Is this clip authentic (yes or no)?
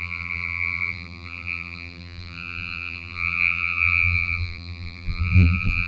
no